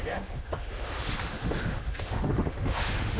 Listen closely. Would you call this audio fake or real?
fake